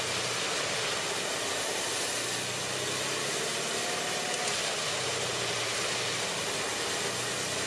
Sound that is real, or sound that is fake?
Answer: real